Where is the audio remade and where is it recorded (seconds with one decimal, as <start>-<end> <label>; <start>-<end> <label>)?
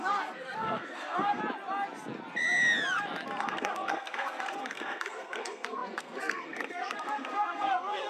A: 0.0-1.4 remade; 1.4-3.4 recorded; 3.4-8.1 remade